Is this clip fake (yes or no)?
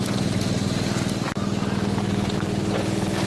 no